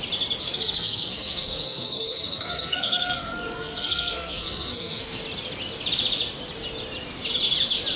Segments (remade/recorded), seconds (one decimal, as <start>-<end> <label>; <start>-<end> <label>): 0.0-0.4 recorded; 0.4-5.2 remade; 5.2-8.0 recorded